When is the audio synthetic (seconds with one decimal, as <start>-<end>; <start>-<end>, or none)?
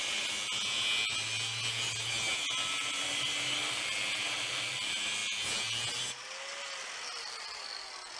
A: none